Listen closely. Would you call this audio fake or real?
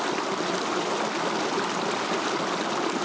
real